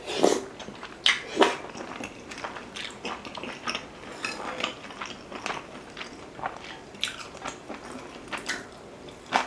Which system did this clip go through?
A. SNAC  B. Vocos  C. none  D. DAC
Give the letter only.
C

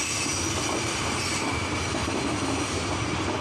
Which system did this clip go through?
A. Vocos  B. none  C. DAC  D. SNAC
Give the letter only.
B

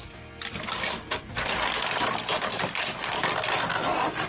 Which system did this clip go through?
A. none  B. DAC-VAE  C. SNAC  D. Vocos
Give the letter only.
A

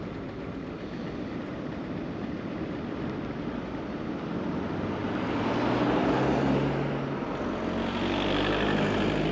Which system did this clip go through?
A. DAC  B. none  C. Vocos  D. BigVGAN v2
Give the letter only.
B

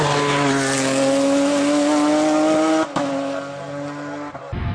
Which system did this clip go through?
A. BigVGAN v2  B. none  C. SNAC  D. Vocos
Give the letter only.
B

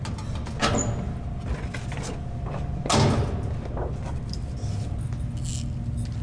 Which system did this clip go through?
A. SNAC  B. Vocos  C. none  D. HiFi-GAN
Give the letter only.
C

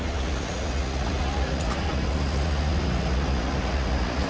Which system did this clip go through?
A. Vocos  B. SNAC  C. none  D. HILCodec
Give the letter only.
A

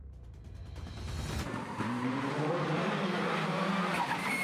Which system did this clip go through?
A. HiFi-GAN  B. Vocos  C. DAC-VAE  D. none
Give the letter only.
D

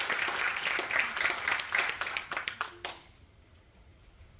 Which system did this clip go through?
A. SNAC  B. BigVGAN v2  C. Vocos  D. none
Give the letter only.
D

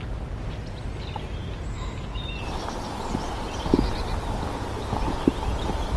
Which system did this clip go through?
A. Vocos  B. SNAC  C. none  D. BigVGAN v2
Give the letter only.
C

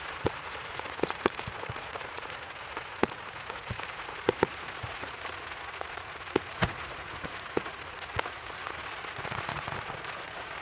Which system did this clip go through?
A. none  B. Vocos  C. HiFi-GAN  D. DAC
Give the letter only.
B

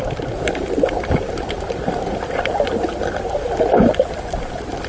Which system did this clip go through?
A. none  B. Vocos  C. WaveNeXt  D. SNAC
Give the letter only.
A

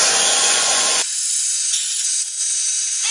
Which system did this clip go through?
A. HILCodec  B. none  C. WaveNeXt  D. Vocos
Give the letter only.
D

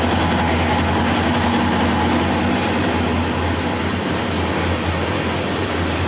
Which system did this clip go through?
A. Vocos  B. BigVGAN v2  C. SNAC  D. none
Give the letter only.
D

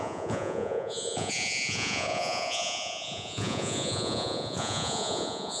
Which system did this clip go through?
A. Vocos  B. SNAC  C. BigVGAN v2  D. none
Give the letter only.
A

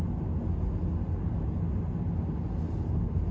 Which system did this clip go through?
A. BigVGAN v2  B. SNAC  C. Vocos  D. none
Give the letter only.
D